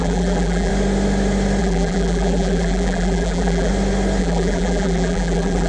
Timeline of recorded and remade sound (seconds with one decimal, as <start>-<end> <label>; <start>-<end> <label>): 0.0-0.7 remade; 0.7-1.6 recorded; 1.6-3.7 remade; 3.7-4.2 recorded; 4.2-5.7 remade